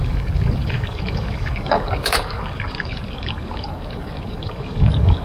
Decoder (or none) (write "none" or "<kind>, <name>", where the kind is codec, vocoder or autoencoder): codec, DAC